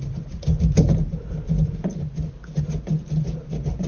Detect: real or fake real